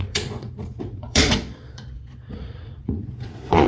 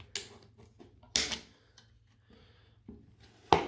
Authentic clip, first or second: second